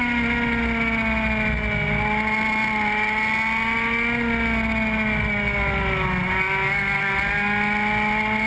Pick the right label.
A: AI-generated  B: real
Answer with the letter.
B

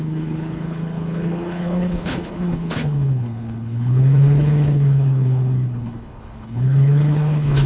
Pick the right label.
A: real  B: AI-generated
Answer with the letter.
B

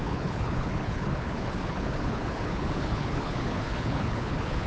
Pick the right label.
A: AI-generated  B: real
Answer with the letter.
A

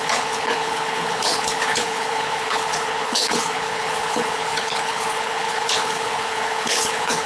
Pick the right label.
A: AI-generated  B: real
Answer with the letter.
A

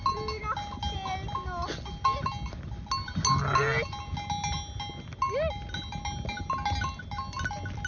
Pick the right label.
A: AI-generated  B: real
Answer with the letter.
B